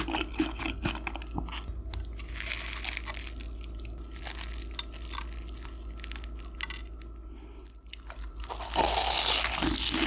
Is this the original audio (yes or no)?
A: yes